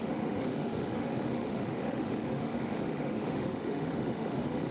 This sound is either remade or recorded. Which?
remade